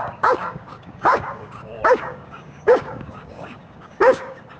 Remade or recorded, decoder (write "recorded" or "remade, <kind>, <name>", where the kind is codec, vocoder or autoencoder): remade, codec, DAC